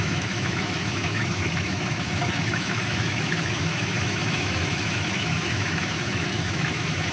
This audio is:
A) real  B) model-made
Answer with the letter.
B